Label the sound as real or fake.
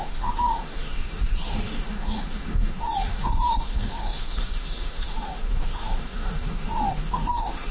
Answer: fake